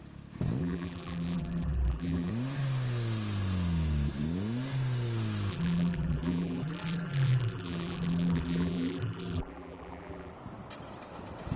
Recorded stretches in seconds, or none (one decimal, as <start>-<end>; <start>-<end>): 0.0-0.6; 2.3-5.5; 10.3-11.6